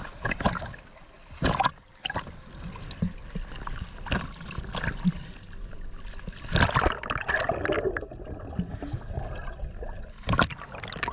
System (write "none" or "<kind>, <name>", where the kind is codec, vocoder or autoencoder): none